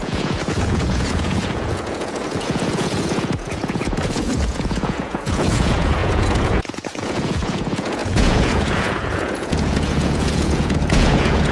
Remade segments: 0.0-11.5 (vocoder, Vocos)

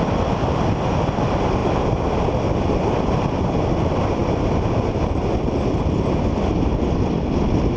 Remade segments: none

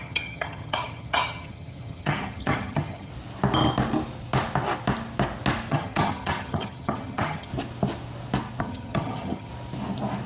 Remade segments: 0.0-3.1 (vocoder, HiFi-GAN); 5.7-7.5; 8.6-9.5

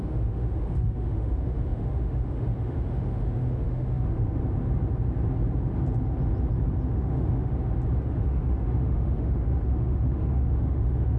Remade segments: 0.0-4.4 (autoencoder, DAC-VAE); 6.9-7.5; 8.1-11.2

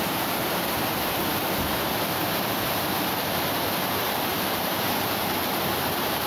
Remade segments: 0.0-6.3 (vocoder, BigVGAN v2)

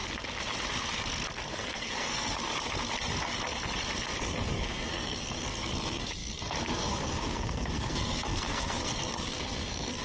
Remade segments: 1.5-2.5 (codec, SNAC); 4.2-10.0

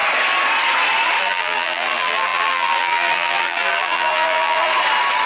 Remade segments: 1.2-4.7 (vocoder, BigVGAN v2)